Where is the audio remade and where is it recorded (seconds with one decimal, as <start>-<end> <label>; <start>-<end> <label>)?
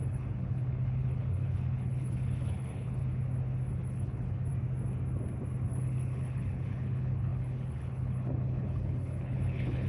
0.0-3.0 remade; 3.0-3.7 recorded; 3.7-4.5 remade; 4.5-5.7 recorded; 5.7-9.9 remade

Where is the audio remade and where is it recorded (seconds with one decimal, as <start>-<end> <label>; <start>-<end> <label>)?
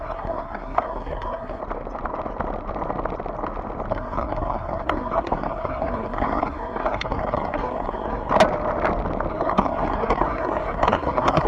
0.0-1.6 remade; 1.6-3.9 recorded; 3.9-8.3 remade; 8.3-9.3 recorded; 9.3-11.5 remade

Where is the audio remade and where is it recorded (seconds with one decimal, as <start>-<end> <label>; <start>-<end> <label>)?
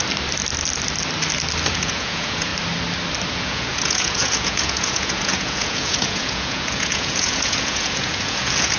0.0-1.7 recorded; 1.7-2.5 remade; 2.5-3.3 recorded; 3.3-8.8 remade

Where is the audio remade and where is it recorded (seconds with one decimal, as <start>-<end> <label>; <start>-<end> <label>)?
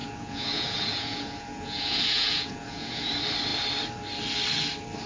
0.0-3.1 remade; 3.1-5.1 recorded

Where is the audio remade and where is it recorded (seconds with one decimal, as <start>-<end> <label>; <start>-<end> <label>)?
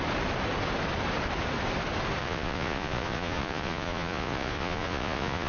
0.0-2.2 recorded; 2.2-5.5 remade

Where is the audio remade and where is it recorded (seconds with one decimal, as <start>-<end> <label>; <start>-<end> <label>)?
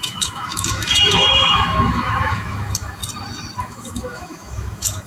0.0-3.0 remade; 3.0-3.6 recorded; 3.6-5.1 remade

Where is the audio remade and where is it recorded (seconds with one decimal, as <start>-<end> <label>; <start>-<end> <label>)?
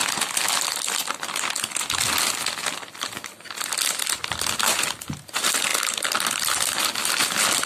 0.0-7.7 recorded